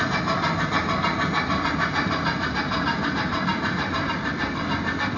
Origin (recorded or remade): recorded